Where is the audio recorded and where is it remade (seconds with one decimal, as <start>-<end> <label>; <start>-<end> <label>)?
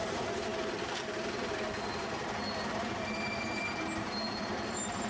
0.0-0.5 remade; 0.5-3.6 recorded; 3.6-5.1 remade